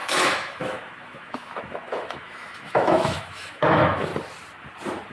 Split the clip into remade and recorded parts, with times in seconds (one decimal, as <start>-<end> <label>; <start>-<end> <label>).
0.0-4.1 remade; 4.1-5.1 recorded